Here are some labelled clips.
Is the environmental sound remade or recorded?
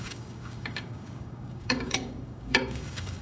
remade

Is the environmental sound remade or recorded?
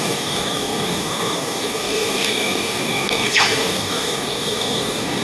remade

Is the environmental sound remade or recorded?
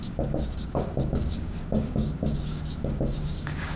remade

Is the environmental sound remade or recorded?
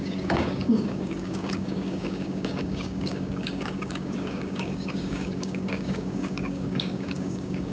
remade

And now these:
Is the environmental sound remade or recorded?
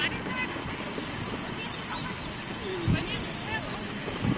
recorded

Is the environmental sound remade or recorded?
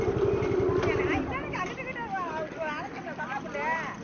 recorded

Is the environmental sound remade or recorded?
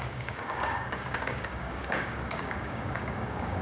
remade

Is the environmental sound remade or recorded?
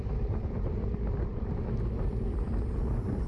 recorded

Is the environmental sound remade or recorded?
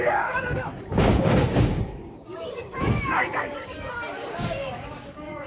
remade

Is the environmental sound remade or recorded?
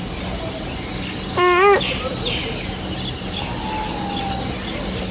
recorded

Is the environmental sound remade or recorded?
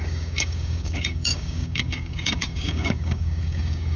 remade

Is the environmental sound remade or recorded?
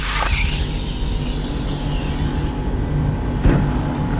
recorded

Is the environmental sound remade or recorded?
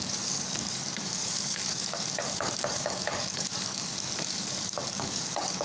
remade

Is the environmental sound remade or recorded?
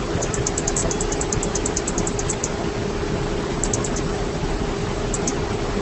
recorded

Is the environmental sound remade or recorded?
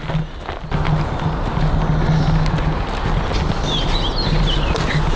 recorded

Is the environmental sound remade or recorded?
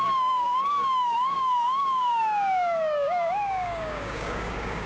remade